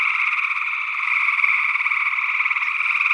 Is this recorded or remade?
recorded